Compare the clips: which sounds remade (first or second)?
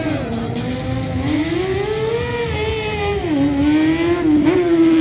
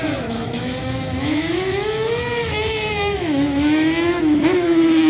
second